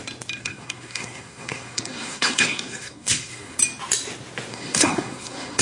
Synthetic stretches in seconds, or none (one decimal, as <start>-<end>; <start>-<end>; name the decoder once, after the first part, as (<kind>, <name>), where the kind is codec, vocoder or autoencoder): 0.4-3.6 (codec, SNAC); 4.5-5.6

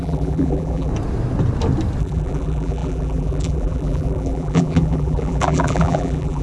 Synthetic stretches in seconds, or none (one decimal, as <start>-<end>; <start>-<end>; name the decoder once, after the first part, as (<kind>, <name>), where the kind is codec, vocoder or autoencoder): 0.0-0.9 (vocoder, BigVGAN v2); 2.0-6.4

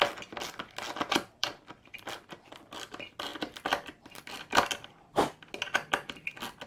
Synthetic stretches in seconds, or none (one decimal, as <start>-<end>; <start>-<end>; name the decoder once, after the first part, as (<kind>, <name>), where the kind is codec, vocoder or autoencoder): 1.4-2.9 (vocoder, BigVGAN v2); 3.3-5.5

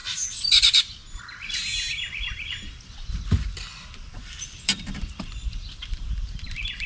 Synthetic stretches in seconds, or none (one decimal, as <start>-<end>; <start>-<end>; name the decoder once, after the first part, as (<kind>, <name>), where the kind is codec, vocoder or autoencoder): 4.1-6.9 (vocoder, BigVGAN v2)

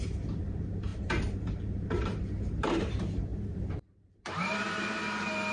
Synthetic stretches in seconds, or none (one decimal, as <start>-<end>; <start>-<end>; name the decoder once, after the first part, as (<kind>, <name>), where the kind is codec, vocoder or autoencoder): 0.0-5.5 (vocoder, BigVGAN v2)

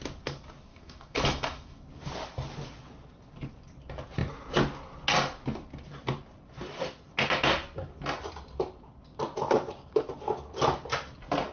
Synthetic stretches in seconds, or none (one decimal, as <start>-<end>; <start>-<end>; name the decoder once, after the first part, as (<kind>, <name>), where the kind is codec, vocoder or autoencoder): 0.7-1.8 (autoencoder, DAC-VAE)

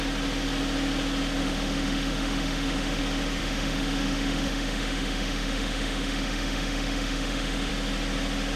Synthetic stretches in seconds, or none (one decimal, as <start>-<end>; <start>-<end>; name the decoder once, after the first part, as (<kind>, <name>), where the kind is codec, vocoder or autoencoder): 1.4-3.0 (autoencoder, DAC-VAE); 3.4-7.7

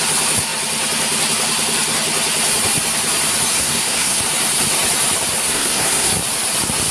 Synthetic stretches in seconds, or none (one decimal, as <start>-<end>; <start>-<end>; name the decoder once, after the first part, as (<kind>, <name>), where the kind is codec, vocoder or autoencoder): 3.5-4.2 (codec, SNAC); 5.4-6.1